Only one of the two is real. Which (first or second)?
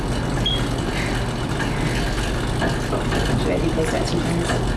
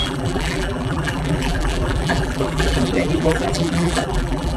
first